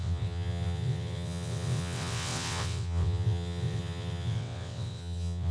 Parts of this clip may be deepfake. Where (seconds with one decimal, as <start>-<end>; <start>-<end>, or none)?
0.0-5.5